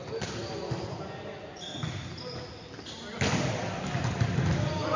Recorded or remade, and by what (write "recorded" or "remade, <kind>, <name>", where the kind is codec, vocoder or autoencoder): recorded